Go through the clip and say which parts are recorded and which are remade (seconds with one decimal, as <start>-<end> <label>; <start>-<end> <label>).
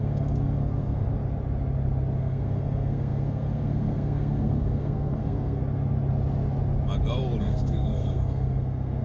0.0-1.1 remade; 1.1-2.2 recorded; 2.2-5.6 remade; 5.6-7.4 recorded; 7.4-9.0 remade